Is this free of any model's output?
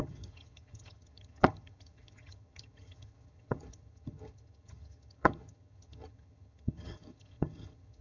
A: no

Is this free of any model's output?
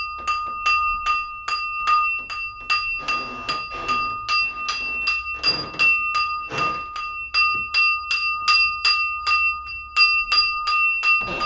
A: yes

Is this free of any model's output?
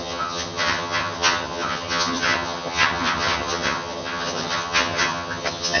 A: no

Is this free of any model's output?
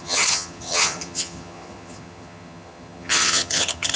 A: no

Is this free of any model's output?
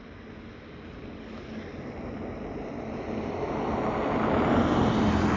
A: yes